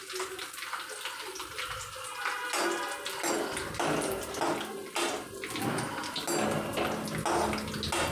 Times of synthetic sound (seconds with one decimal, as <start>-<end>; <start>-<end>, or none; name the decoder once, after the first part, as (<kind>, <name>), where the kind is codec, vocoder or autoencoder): none